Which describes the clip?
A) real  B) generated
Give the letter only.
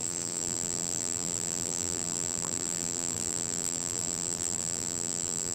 B